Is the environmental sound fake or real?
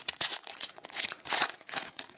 fake